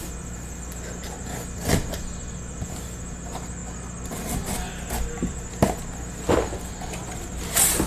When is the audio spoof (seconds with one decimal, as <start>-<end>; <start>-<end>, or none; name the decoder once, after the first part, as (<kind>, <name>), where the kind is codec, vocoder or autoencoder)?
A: none